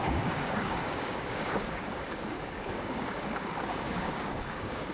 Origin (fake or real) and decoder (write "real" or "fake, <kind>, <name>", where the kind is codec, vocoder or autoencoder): fake, codec, DAC